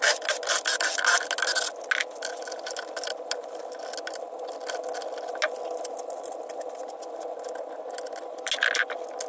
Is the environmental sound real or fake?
real